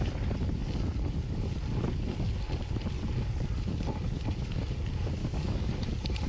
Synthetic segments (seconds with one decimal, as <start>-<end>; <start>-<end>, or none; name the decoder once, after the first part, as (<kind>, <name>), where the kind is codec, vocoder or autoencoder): 5.2-5.7 (codec, DAC)